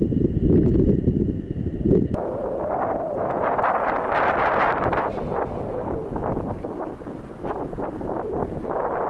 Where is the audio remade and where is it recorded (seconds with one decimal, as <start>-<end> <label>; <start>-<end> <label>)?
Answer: 0.0-9.1 recorded